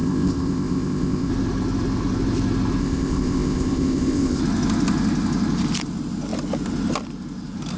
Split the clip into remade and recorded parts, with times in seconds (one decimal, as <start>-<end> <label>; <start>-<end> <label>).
0.0-1.3 remade; 1.3-2.8 recorded; 2.8-4.4 remade; 4.4-7.8 recorded